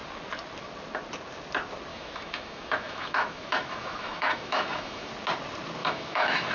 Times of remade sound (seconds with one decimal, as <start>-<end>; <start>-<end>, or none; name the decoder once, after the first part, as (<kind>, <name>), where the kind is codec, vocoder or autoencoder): 1.9-5.1 (autoencoder, DAC-VAE); 5.8-6.5